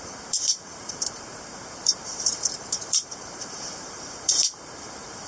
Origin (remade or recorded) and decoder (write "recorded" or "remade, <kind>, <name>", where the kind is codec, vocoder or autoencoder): remade, vocoder, BigVGAN v2